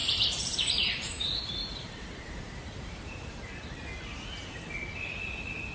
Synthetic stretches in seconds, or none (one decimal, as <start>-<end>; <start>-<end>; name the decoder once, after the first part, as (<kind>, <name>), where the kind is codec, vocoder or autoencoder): 0.0-3.4 (vocoder, BigVGAN v2)